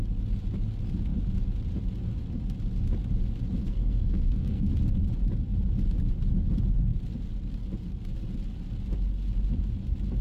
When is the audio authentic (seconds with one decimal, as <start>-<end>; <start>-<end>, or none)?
0.0-3.6; 4.7-10.2